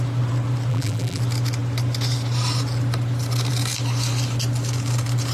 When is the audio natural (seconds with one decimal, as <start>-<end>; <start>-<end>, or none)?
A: 0.0-0.7; 1.2-5.3